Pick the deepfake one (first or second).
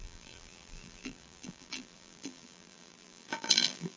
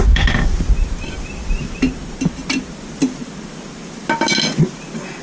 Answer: first